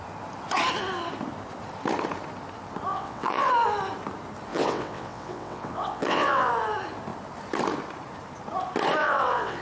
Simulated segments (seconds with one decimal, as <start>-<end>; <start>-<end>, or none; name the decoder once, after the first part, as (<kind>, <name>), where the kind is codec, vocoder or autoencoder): 2.9-3.5 (vocoder, WaveNeXt); 4.5-6.5; 9.0-9.6